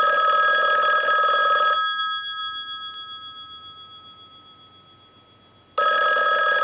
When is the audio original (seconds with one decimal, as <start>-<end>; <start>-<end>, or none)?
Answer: 0.0-6.6